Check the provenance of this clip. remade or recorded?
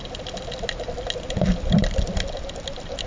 recorded